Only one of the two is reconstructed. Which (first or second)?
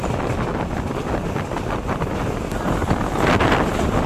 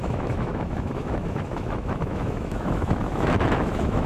second